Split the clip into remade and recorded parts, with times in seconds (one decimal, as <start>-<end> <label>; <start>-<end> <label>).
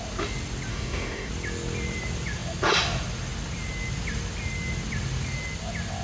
0.0-0.7 recorded; 0.7-1.3 remade; 1.3-6.0 recorded